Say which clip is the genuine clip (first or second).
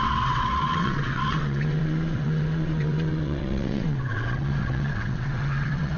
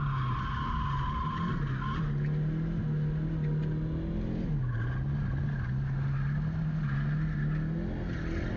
second